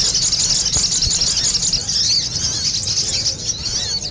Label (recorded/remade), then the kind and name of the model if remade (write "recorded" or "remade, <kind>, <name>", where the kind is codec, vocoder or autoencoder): recorded